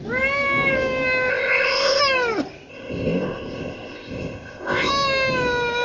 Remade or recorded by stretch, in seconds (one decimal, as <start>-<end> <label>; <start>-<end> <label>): 0.0-1.3 recorded; 1.3-2.0 remade; 2.0-2.7 recorded; 2.7-4.9 remade; 4.9-5.8 recorded